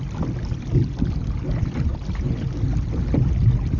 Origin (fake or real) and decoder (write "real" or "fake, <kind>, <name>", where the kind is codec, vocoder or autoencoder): real